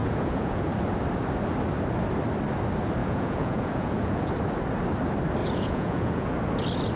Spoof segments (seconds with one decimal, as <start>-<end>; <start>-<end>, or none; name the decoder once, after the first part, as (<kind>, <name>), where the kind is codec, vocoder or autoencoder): 0.0-0.7 (vocoder, Vocos); 3.0-4.3; 5.4-6.3